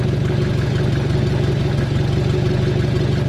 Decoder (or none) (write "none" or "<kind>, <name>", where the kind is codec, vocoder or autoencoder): none